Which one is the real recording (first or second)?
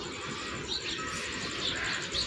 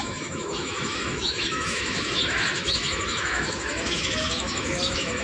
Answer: first